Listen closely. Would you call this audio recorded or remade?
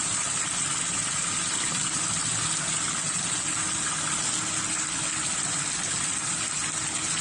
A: recorded